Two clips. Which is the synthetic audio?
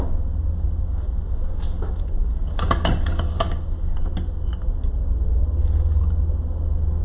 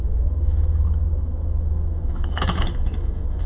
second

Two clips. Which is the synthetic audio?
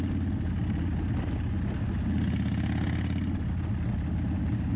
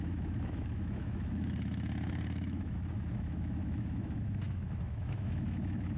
second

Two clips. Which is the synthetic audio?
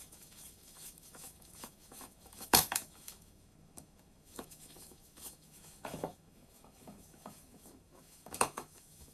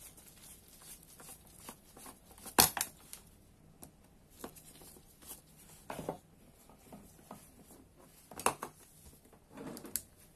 first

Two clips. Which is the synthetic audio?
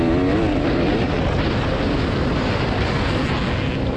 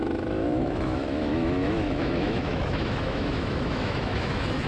second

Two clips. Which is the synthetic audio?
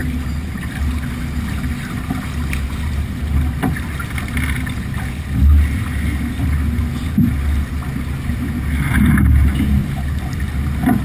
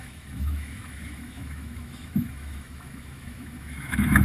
second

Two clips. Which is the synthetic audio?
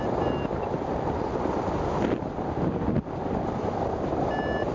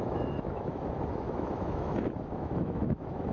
second